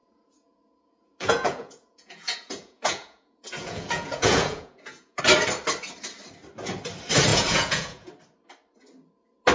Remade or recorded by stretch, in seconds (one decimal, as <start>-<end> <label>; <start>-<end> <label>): 0.0-5.2 remade; 5.2-7.3 recorded; 7.3-8.1 remade; 8.1-9.5 recorded